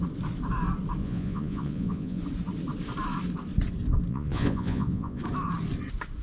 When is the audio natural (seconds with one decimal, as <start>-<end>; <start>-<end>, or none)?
0.0-1.0; 2.2-4.1; 5.2-6.2